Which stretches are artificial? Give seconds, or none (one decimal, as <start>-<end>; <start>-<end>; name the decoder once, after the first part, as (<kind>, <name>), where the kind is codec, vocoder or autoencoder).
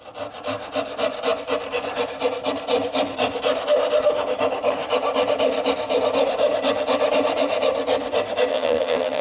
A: 8.5-9.2 (vocoder, HiFi-GAN)